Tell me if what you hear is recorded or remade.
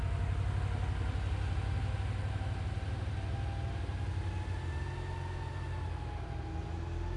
recorded